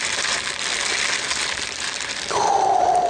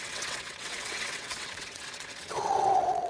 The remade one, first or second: second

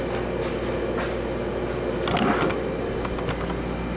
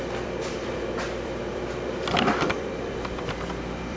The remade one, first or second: second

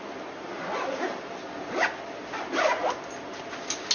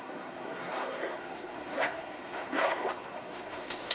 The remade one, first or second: second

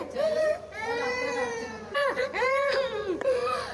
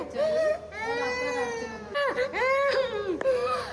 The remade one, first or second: first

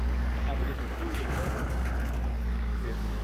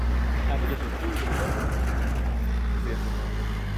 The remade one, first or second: first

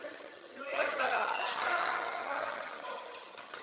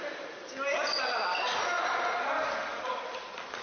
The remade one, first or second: first